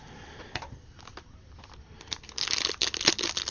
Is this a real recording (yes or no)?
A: yes